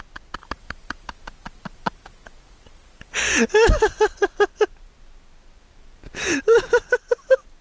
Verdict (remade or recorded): recorded